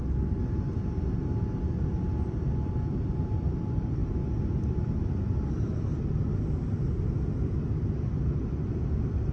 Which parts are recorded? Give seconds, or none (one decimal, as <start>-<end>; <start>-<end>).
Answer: 0.0-9.3